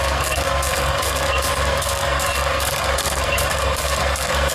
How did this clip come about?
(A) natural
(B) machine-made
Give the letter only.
B